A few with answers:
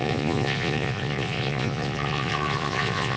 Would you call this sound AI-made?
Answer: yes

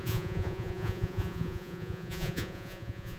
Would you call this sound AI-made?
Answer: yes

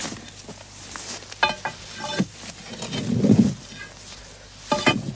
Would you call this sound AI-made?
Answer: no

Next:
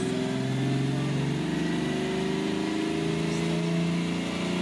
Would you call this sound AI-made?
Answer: no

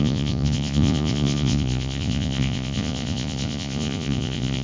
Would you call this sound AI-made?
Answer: yes